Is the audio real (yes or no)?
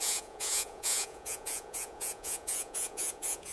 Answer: no